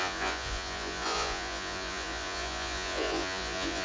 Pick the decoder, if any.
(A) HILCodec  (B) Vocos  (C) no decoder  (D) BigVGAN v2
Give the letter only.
B